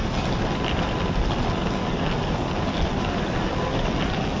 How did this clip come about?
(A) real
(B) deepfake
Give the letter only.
A